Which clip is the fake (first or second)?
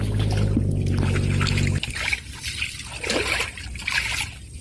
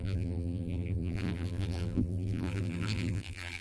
second